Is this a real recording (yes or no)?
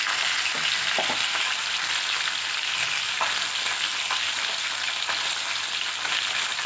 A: yes